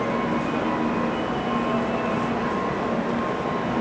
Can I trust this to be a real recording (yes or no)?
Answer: yes